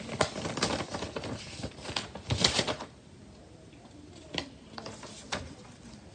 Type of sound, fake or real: real